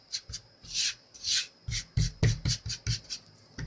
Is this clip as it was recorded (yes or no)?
yes